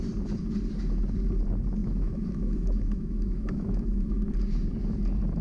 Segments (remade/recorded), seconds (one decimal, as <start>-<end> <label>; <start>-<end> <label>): 0.0-1.8 recorded; 1.8-4.3 remade; 4.3-5.4 recorded